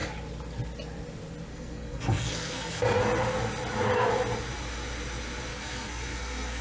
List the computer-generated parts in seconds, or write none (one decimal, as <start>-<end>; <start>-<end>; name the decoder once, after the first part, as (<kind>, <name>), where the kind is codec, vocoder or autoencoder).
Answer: 1.5-3.0 (codec, SNAC); 5.5-6.6